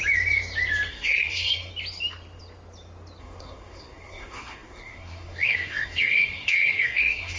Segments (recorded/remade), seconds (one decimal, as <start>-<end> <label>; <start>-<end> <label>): 0.0-0.9 recorded; 0.9-1.7 remade; 1.7-3.2 recorded; 3.2-7.4 remade